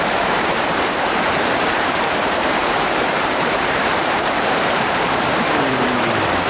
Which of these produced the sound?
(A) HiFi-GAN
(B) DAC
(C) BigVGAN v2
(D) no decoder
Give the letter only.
C